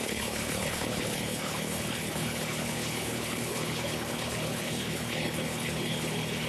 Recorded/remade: remade